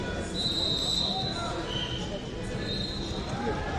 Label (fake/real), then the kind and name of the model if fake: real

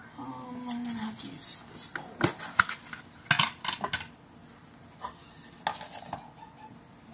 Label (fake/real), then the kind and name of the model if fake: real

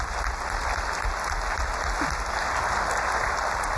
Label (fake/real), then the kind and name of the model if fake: real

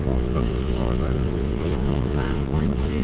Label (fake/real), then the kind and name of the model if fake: fake, vocoder, Vocos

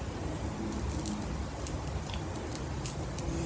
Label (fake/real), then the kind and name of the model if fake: real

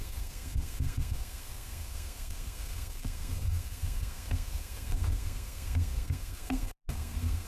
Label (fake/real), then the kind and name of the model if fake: fake, codec, SNAC